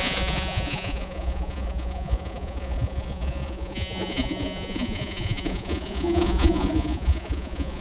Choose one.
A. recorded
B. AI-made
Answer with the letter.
B